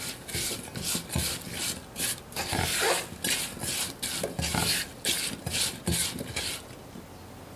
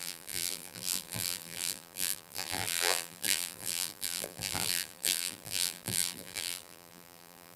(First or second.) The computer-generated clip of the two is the second